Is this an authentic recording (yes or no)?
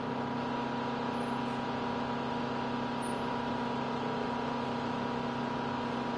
yes